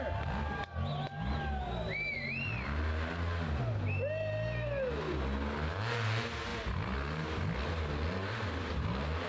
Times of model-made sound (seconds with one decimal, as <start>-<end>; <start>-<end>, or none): none

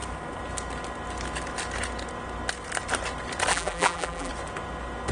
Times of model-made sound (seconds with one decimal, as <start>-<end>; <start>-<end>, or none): 3.5-4.3

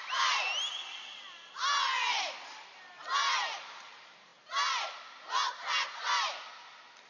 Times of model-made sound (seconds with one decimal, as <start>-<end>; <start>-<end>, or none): 0.0-1.2; 3.6-4.3

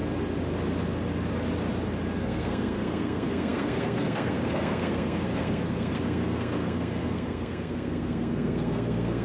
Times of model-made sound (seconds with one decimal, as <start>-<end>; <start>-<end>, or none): 2.2-9.2

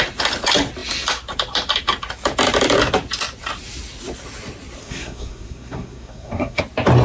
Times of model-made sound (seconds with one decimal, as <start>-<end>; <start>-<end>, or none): 4.8-6.6

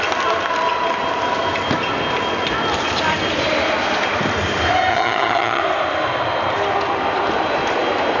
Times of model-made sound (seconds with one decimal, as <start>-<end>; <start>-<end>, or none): 4.9-5.6

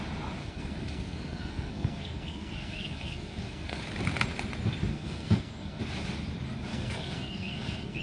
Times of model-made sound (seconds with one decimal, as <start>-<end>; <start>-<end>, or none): 0.4-3.8; 4.9-5.8; 6.7-8.0

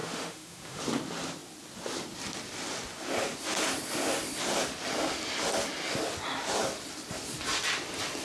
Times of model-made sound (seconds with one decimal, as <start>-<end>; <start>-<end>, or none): 0.0-0.8